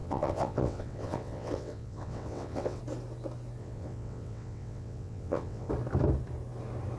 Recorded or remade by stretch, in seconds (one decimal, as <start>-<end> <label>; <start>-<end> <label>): 0.0-2.8 remade; 2.8-3.6 recorded; 3.6-5.7 remade; 5.7-7.0 recorded